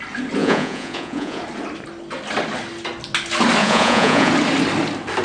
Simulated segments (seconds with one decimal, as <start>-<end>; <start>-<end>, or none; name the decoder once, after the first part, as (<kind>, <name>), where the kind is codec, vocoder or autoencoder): 0.4-1.4 (vocoder, Vocos); 3.6-4.3